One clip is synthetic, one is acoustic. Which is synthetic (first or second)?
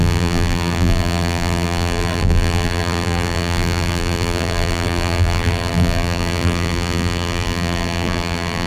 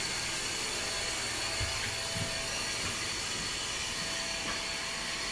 first